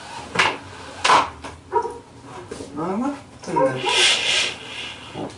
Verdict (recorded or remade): recorded